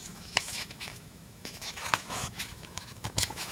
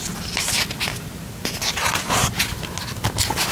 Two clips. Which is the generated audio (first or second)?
first